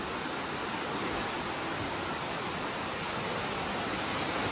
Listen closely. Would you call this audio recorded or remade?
recorded